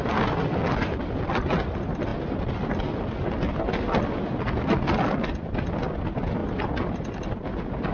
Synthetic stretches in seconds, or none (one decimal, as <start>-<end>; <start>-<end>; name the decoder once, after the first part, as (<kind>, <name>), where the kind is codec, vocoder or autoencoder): none